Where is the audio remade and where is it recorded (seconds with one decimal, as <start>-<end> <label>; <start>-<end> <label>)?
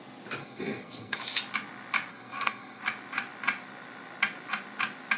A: 0.0-0.4 recorded; 0.4-1.2 remade; 1.2-2.1 recorded; 2.1-2.8 remade; 2.8-5.2 recorded